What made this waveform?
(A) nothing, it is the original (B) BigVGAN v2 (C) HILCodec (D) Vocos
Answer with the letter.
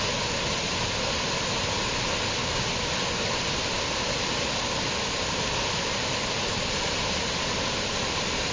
A